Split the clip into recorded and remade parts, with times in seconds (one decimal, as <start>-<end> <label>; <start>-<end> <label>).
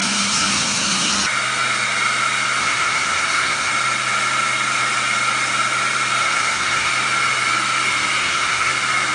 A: 0.0-1.1 remade; 1.1-2.6 recorded; 2.6-3.7 remade; 3.7-6.2 recorded; 6.2-6.9 remade; 6.9-8.2 recorded; 8.2-8.7 remade; 8.7-9.1 recorded